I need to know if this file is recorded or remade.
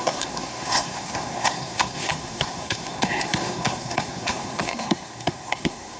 remade